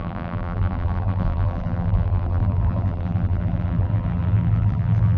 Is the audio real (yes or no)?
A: no